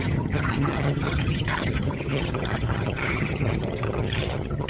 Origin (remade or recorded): remade